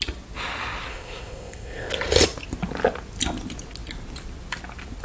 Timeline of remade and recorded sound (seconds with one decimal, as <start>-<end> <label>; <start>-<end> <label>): 0.0-0.9 recorded; 0.9-1.9 remade; 1.9-5.0 recorded